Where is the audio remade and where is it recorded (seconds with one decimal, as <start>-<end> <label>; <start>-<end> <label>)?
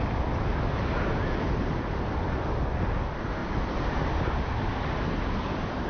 0.0-5.9 recorded